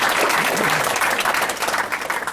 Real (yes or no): yes